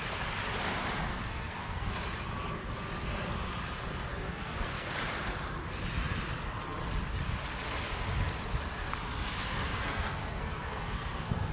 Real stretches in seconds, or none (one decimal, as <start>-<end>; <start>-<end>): 0.0-1.1; 1.9-4.1; 4.9-9.7